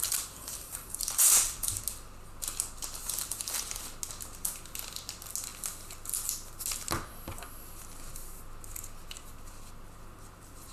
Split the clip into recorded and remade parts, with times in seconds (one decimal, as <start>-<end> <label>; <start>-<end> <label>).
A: 0.0-1.8 remade; 1.8-3.0 recorded; 3.0-3.8 remade; 3.8-10.7 recorded